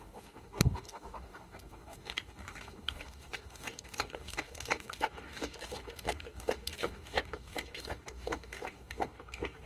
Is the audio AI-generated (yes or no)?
yes